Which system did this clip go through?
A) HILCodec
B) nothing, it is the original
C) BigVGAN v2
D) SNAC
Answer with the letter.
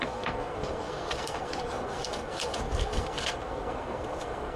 D